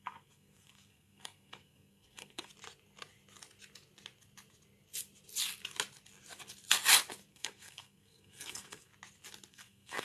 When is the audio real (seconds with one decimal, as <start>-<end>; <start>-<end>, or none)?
2.5-7.3; 8.9-9.5